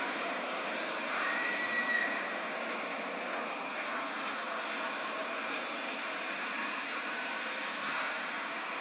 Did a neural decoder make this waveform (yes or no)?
no